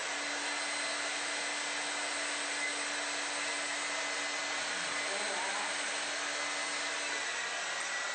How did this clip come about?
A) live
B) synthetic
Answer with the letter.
A